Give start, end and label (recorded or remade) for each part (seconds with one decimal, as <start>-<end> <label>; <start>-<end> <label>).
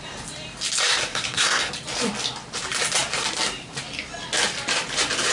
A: 0.0-1.1 recorded; 1.1-1.7 remade; 1.7-5.3 recorded